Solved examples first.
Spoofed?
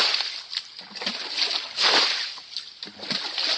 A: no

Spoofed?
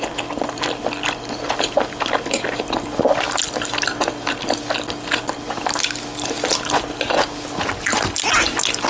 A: no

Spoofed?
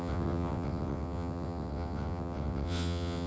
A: yes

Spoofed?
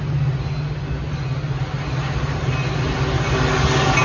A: no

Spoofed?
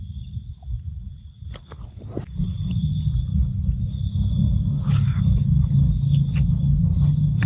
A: no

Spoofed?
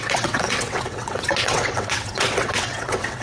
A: yes